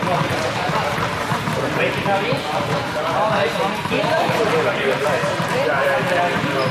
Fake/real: fake